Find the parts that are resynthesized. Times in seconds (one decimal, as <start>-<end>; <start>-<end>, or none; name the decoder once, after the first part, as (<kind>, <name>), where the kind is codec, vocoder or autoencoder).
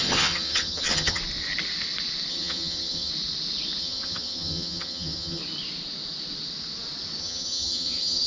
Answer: 0.0-1.2 (vocoder, HiFi-GAN); 2.3-3.1; 3.8-5.4; 7.2-8.3